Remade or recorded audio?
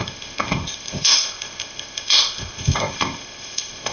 remade